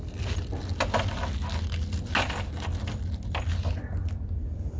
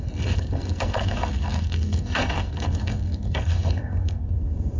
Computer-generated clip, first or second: second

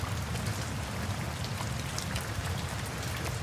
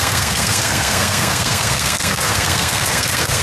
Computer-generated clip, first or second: second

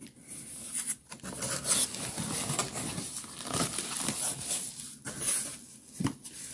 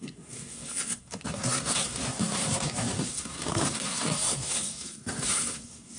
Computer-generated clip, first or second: second